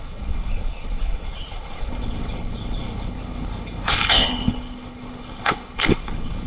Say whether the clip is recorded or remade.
remade